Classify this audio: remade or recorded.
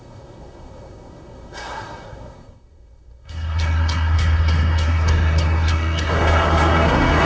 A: remade